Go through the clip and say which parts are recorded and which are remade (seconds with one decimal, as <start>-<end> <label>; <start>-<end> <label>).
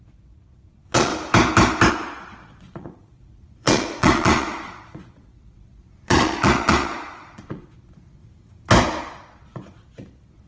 0.0-1.1 remade; 1.1-1.9 recorded; 1.9-8.2 remade; 8.2-9.0 recorded; 9.0-10.5 remade